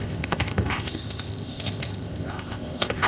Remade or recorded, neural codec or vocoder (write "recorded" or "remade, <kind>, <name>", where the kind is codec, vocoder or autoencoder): remade, codec, ZipCodec